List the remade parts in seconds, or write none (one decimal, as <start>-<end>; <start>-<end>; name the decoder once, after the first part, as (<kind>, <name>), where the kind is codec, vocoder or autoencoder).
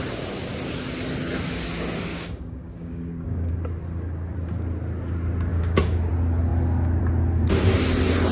2.1-3.5 (codec, DAC); 5.5-6.1